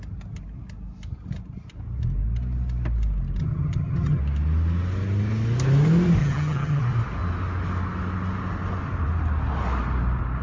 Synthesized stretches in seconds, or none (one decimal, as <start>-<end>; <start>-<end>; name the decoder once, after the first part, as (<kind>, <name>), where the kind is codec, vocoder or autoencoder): 3.4-4.2 (vocoder, HiFi-GAN); 6.2-6.8